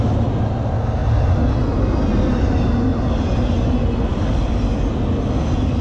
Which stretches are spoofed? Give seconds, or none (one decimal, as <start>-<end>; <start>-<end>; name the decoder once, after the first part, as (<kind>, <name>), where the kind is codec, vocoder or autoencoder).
4.1-4.9 (vocoder, BigVGAN v2)